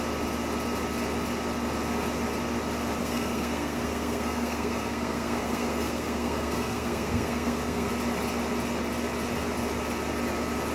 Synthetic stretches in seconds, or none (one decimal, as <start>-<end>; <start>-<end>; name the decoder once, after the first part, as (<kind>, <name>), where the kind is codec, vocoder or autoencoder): 3.0-7.9 (codec, SNAC)